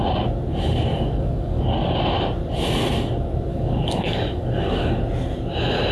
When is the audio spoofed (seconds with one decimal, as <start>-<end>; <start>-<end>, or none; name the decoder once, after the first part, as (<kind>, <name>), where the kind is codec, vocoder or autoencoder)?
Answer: 0.9-1.6 (codec, DAC); 3.5-5.0